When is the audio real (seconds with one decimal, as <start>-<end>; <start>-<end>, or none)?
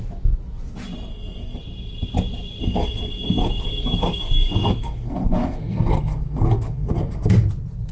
0.0-1.1; 1.6-2.6; 7.3-7.9